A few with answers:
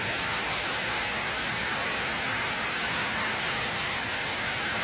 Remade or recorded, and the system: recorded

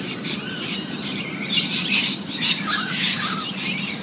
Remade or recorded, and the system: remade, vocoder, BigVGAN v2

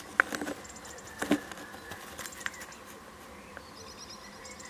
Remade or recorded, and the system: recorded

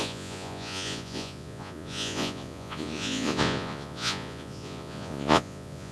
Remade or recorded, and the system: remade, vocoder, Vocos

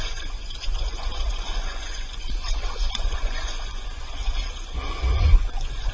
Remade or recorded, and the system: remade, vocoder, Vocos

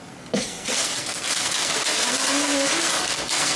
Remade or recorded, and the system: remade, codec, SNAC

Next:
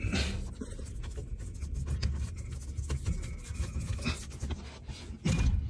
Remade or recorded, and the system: recorded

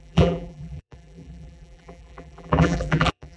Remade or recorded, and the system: remade, vocoder, BigVGAN v2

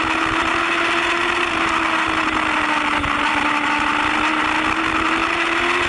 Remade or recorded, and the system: recorded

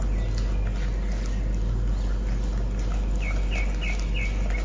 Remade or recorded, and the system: recorded